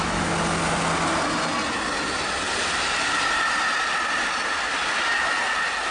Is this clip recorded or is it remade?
recorded